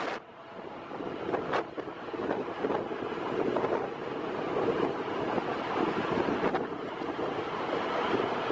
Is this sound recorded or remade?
recorded